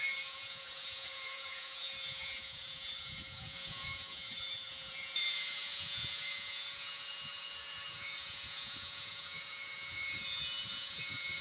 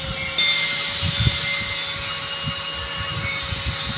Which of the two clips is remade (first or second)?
first